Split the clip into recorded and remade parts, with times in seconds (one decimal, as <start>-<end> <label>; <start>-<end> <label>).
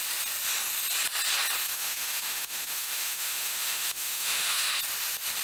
0.0-1.6 recorded; 1.6-4.8 remade; 4.8-5.4 recorded